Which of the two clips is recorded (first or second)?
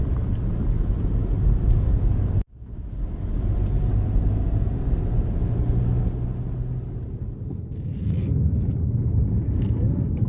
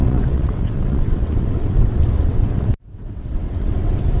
first